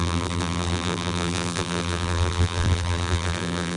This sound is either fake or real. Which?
fake